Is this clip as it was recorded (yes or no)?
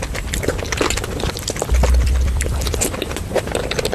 yes